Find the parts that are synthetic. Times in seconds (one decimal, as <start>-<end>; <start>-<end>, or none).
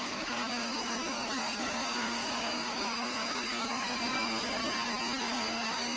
0.0-4.6; 5.3-6.0